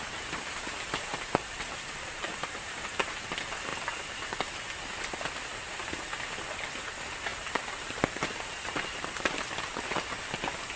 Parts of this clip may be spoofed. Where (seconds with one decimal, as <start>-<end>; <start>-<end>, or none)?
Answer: 1.1-3.0; 7.3-9.6